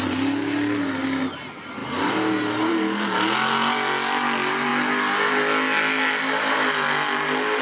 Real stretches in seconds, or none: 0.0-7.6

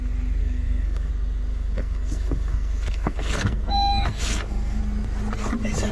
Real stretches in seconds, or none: 0.0-0.4; 1.1-1.5; 4.8-5.9

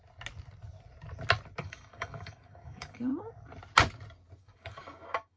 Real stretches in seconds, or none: 0.0-1.6; 3.1-4.4